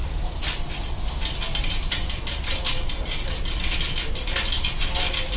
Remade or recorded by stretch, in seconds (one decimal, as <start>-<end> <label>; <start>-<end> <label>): 0.0-5.4 recorded